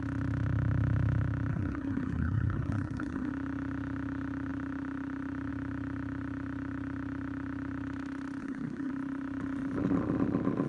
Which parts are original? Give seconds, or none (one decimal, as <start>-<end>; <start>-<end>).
0.0-1.5; 3.3-8.4; 8.9-10.7